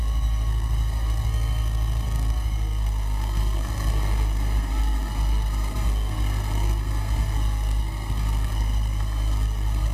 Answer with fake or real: fake